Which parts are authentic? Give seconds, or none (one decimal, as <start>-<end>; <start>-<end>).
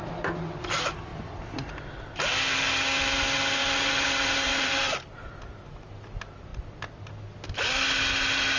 0.0-3.6; 5.3-8.6